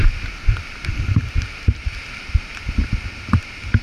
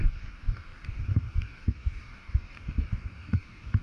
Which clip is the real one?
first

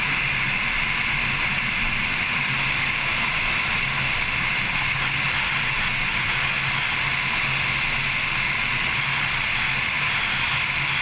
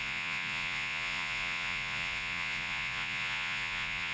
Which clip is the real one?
first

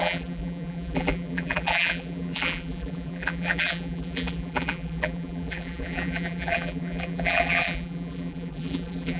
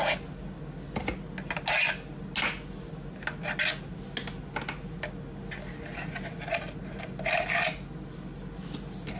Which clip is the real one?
second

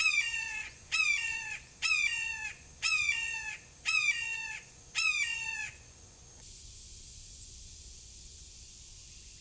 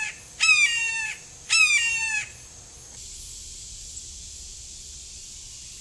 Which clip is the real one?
second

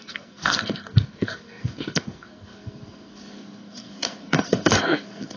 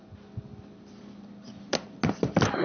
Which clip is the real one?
second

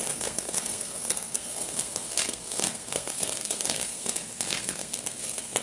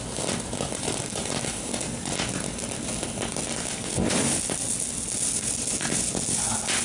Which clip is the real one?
second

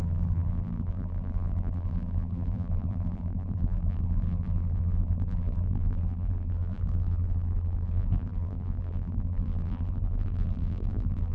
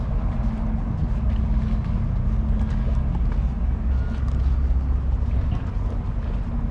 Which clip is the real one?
second